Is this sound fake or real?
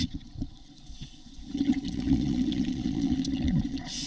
fake